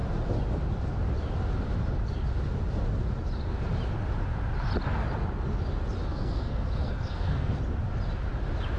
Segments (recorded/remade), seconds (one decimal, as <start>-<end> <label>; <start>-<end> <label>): 0.0-6.1 recorded; 6.1-7.6 remade; 7.6-8.8 recorded